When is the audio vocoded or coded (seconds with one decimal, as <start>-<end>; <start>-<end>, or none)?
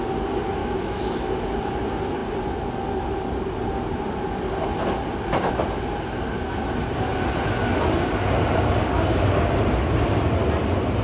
0.6-1.4